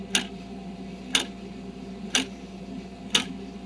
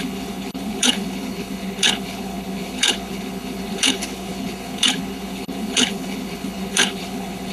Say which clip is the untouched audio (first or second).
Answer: first